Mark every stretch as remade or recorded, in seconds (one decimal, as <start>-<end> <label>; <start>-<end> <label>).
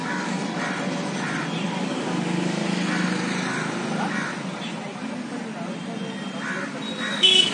0.0-0.4 remade; 0.4-1.8 recorded; 1.8-2.6 remade; 2.6-7.1 recorded; 7.1-7.5 remade